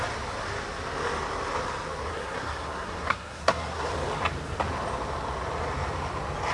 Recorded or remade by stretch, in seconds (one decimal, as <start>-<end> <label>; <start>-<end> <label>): 0.0-2.1 recorded; 2.1-3.9 remade; 3.9-6.5 recorded